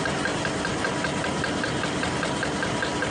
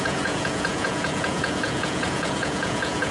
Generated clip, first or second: second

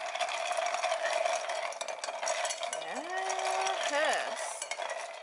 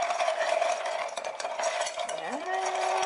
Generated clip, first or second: second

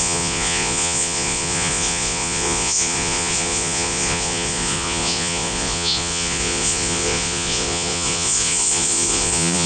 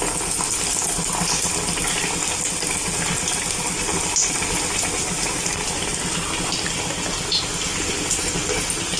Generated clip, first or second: first